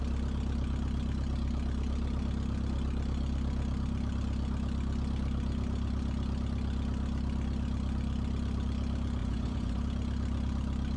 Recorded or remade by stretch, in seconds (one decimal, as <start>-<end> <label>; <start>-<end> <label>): 0.0-9.2 recorded; 9.2-9.8 remade; 9.8-11.0 recorded